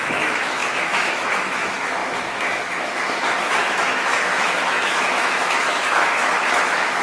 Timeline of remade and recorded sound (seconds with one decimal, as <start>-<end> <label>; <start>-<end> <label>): 0.0-7.0 remade

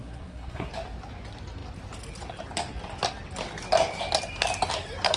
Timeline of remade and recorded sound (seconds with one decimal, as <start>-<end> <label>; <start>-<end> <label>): 0.0-0.7 remade; 0.7-5.2 recorded

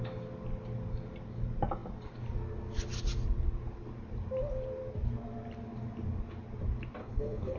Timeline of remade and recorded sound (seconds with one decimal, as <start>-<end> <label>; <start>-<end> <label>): 0.0-7.0 recorded; 7.0-7.6 remade